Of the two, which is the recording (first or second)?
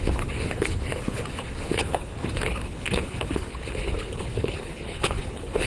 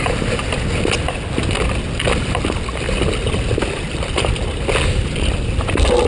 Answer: second